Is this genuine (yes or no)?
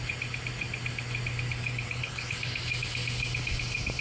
yes